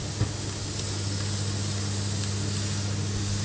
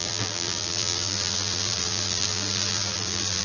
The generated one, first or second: second